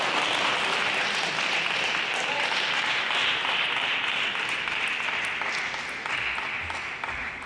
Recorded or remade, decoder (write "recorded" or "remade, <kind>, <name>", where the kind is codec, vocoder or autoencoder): recorded